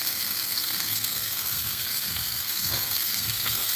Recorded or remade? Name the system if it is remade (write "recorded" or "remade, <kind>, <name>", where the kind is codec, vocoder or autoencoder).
remade, codec, SNAC